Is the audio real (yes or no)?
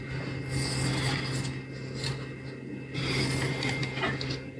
yes